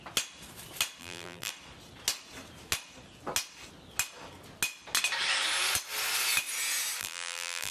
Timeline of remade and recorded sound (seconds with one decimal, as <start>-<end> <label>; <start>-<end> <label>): 0.0-1.0 recorded; 1.0-1.5 remade; 1.5-7.0 recorded; 7.0-7.7 remade